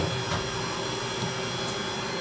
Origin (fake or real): real